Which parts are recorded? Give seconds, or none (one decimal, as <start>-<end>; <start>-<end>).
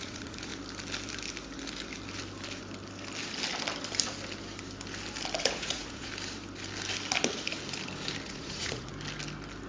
0.5-5.4; 6.1-8.3; 8.9-9.7